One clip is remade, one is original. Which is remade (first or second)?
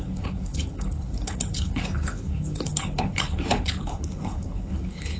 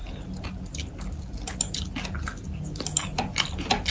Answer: first